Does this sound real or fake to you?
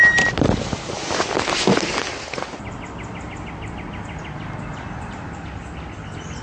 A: real